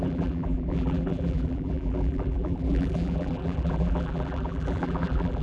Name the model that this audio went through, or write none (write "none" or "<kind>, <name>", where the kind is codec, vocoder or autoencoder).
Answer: vocoder, BigVGAN v2